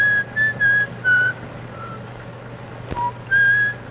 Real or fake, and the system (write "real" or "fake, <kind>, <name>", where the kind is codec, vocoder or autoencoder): real